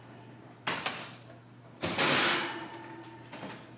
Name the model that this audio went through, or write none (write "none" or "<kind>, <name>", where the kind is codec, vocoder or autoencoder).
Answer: none